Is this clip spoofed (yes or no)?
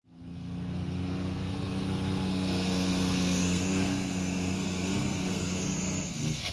yes